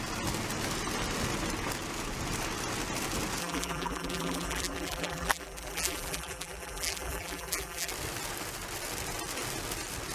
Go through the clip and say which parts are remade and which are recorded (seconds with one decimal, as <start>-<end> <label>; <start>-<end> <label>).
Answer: 0.0-3.4 recorded; 3.4-7.9 remade; 7.9-10.1 recorded

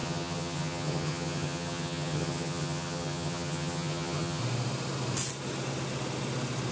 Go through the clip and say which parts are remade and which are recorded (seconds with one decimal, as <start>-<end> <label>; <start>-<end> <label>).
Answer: 0.0-4.4 remade; 4.4-6.7 recorded

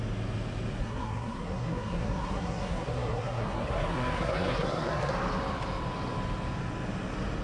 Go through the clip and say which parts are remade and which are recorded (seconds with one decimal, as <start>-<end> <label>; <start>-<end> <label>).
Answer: 0.0-0.8 recorded; 0.8-5.1 remade; 5.1-7.4 recorded

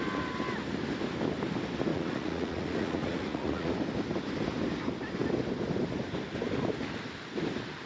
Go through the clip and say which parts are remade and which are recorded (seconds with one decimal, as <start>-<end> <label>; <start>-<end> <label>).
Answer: 0.0-1.9 recorded; 1.9-3.7 remade; 3.7-7.9 recorded

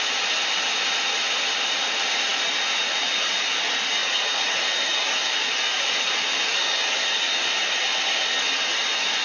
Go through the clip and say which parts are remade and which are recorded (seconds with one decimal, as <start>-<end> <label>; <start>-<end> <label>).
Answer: 0.0-4.0 recorded; 4.0-4.5 remade; 4.5-9.2 recorded

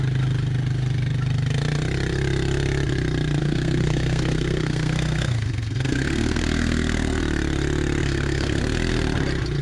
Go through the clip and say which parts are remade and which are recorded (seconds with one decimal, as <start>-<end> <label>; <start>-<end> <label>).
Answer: 0.0-3.4 recorded; 3.4-7.2 remade; 7.2-8.0 recorded; 8.0-8.6 remade; 8.6-9.6 recorded